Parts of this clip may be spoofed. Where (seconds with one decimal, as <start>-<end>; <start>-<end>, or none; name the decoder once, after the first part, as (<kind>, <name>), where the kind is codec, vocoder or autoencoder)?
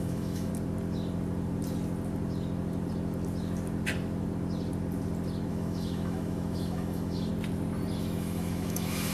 0.0-0.5 (autoencoder, DAC-VAE); 5.5-7.3; 8.0-9.1